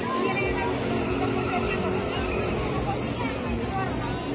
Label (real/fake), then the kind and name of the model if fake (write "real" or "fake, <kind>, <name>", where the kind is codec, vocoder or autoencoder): real